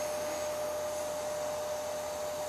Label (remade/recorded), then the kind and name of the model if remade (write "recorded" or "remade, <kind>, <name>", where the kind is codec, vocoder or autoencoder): recorded